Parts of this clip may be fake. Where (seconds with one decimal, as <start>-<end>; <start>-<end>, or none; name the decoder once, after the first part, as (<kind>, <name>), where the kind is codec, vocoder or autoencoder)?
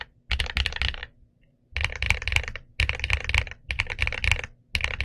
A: none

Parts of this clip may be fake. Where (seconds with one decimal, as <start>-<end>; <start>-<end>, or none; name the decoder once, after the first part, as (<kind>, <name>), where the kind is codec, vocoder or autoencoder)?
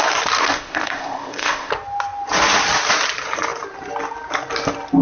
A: 0.4-1.7 (codec, ZipCodec)